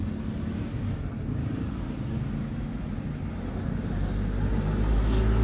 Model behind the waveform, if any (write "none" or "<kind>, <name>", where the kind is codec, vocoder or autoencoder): none